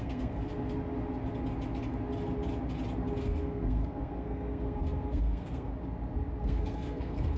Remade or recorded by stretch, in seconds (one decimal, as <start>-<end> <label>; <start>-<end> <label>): 0.0-0.5 remade; 0.5-3.2 recorded; 3.2-5.7 remade; 5.7-6.4 recorded; 6.4-7.4 remade